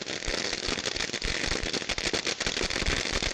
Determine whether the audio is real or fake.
real